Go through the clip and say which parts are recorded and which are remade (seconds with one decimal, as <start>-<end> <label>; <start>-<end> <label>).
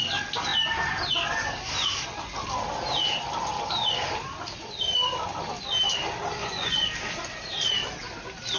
0.0-6.4 recorded; 6.4-6.9 remade; 6.9-8.6 recorded